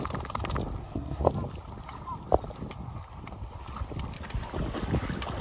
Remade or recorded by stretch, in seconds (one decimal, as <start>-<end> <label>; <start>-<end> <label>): 0.0-0.8 recorded; 0.8-1.3 remade; 1.3-5.4 recorded